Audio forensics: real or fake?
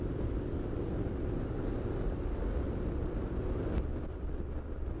real